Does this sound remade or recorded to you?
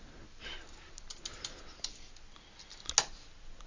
recorded